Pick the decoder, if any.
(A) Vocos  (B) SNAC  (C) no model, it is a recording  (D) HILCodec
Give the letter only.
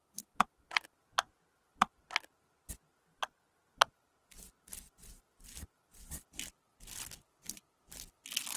C